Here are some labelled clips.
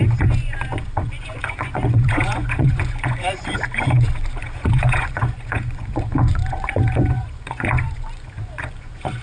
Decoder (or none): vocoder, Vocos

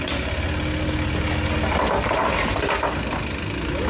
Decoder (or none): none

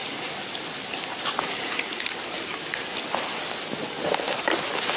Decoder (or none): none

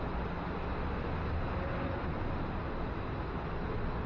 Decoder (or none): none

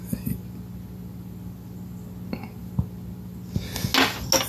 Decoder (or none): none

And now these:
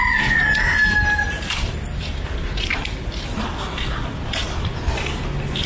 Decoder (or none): none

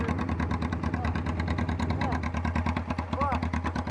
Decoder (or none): none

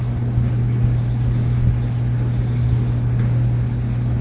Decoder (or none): none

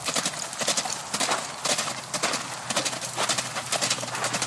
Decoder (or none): none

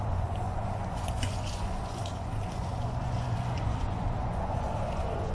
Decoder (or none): vocoder, Vocos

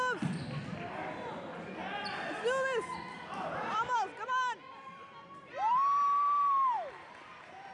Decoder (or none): none